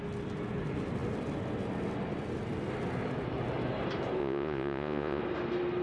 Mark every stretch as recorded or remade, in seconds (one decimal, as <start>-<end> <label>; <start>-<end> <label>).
0.0-4.2 recorded; 4.2-5.2 remade; 5.2-5.8 recorded